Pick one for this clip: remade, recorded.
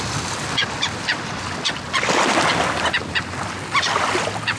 recorded